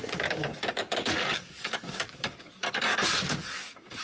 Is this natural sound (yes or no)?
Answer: no